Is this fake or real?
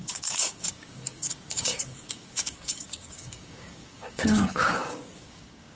fake